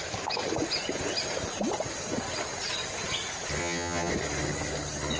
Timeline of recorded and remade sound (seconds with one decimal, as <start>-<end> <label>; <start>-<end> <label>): 0.0-3.6 recorded; 3.6-4.1 remade; 4.1-5.2 recorded